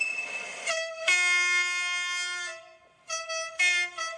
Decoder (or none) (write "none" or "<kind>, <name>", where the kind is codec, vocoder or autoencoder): none